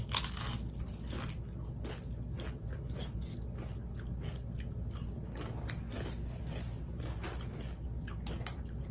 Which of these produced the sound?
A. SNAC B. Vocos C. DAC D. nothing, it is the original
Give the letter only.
D